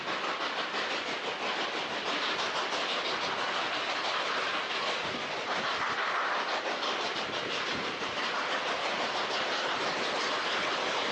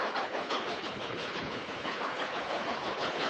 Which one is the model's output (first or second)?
second